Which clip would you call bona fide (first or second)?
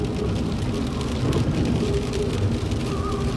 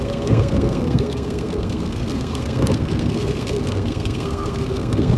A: first